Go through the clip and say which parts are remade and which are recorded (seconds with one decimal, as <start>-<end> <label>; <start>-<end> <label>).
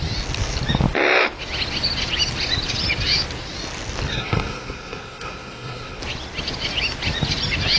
0.0-4.1 recorded; 4.1-6.0 remade; 6.0-7.8 recorded